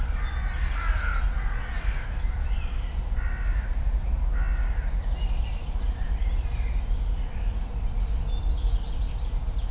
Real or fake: real